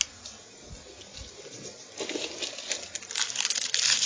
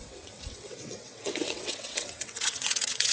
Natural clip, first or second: first